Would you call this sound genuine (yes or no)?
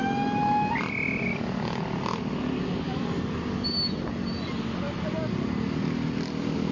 yes